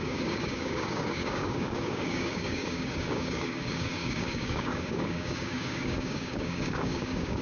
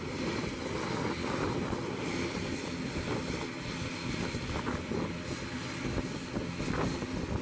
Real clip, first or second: second